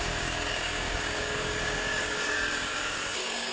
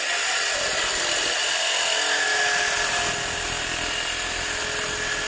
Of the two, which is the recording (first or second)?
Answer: second